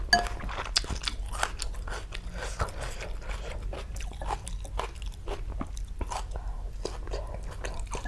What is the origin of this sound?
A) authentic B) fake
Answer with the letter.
A